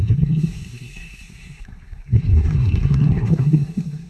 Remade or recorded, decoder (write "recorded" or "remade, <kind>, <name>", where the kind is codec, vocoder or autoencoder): remade, codec, SNAC